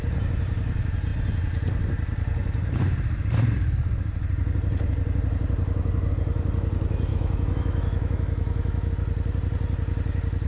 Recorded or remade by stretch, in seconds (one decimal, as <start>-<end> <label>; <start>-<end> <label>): 0.0-7.1 recorded; 7.1-8.9 remade; 8.9-10.5 recorded